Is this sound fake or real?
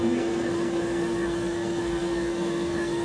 fake